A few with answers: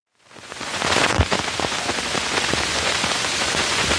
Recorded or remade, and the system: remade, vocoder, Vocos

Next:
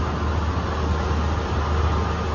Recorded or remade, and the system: recorded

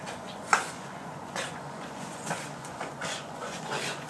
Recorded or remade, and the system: remade, vocoder, Vocos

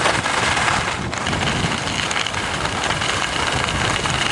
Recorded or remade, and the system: recorded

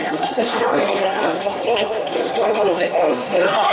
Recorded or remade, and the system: remade, codec, SNAC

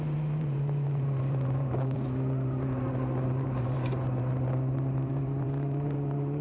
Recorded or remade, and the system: remade, vocoder, BigVGAN v2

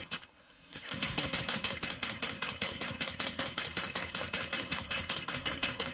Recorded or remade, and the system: remade, codec, SNAC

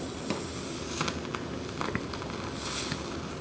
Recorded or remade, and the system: recorded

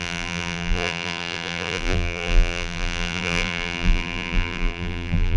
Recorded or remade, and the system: remade, vocoder, BigVGAN v2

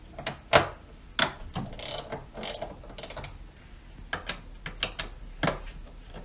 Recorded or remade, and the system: recorded